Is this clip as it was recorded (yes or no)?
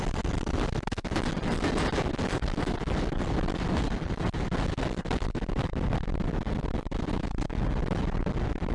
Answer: yes